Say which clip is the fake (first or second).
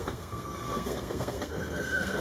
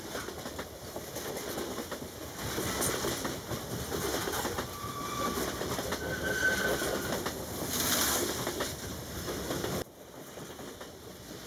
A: first